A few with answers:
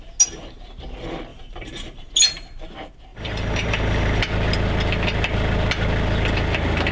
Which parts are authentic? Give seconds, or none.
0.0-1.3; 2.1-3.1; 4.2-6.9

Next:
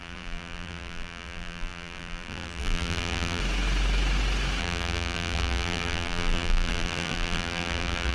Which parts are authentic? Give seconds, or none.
3.4-4.6

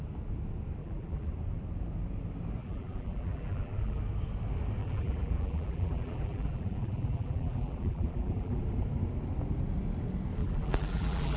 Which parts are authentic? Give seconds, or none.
0.0-0.8; 1.3-2.6; 4.0-4.8; 8.6-10.4

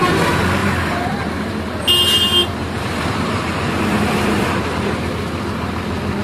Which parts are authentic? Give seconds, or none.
0.0-0.6; 1.6-2.4; 5.1-6.2

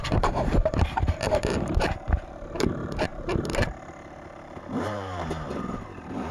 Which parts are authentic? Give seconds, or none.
none

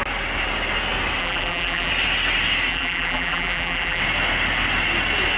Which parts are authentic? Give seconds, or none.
0.0-1.2; 1.9-2.7; 4.0-5.4